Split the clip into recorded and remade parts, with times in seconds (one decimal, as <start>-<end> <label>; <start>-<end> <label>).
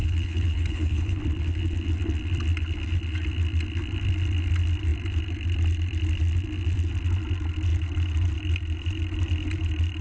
0.0-1.2 remade; 1.2-10.0 recorded